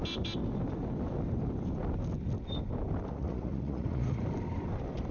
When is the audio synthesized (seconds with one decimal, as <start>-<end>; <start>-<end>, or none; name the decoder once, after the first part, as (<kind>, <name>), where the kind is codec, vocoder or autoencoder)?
3.1-4.2 (vocoder, Vocos)